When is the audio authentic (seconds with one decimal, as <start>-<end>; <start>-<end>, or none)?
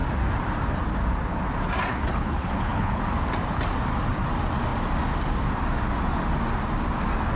0.0-1.9; 3.0-7.4